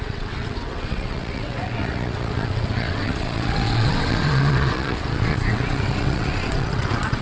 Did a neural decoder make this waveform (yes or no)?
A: yes